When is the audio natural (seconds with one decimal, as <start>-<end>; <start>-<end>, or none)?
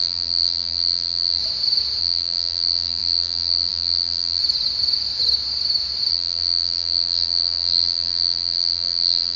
1.4-2.0; 4.4-6.1